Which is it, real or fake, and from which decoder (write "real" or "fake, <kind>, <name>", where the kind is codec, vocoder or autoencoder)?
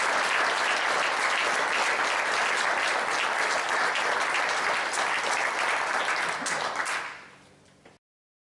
real